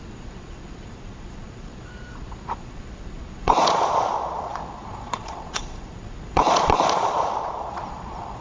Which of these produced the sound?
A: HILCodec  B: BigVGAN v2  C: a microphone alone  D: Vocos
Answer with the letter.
D